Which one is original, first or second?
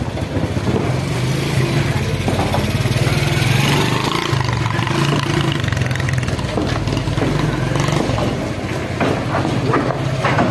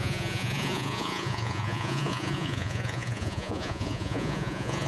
first